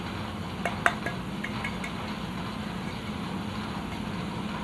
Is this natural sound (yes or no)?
yes